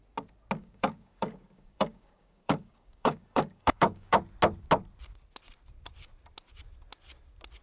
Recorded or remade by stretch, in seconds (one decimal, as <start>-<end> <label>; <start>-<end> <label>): 0.0-0.6 recorded; 0.6-4.2 remade; 4.2-7.6 recorded